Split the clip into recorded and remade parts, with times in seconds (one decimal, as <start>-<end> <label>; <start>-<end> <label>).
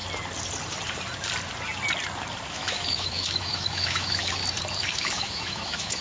0.0-2.5 recorded; 2.5-4.4 remade; 4.4-4.9 recorded; 4.9-6.0 remade